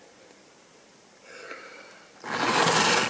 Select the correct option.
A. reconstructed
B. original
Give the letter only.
B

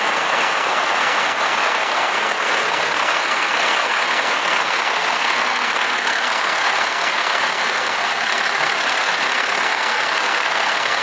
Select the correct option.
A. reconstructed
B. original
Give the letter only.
A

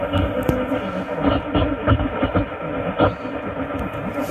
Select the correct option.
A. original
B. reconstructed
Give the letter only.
A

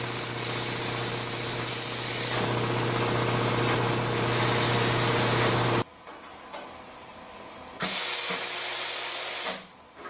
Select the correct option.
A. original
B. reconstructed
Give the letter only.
A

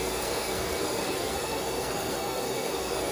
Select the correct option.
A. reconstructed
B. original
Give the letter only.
A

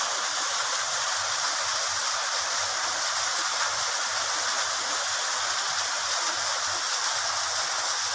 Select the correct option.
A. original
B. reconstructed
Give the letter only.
A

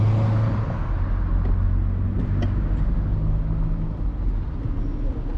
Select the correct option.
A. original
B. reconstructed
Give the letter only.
A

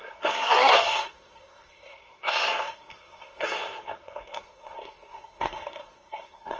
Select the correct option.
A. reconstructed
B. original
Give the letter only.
A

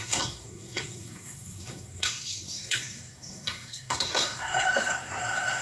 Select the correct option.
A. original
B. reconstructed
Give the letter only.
B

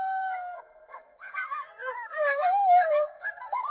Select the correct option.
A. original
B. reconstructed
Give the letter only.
B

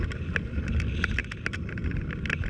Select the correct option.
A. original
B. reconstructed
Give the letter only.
A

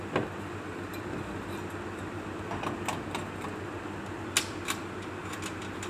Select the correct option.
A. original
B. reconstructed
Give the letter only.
A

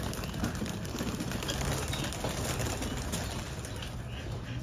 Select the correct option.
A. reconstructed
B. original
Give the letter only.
B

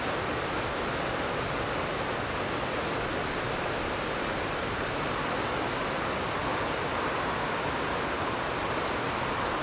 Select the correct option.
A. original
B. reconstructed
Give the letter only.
A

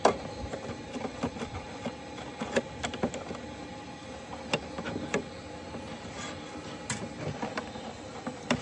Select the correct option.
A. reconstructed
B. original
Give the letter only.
B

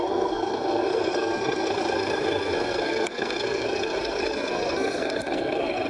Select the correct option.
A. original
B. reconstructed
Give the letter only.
B